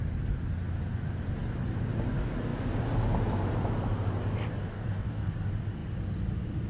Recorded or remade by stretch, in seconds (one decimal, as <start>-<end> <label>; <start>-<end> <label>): 0.0-4.7 recorded; 4.7-5.3 remade; 5.3-6.7 recorded